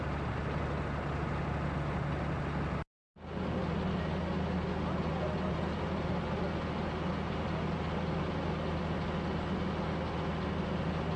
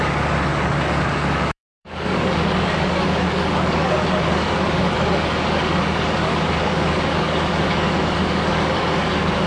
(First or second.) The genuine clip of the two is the first